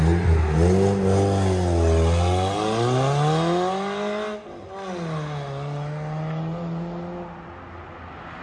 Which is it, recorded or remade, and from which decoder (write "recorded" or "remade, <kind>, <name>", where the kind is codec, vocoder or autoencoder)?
recorded